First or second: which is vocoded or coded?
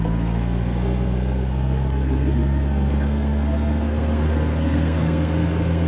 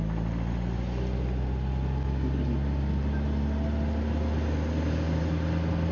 first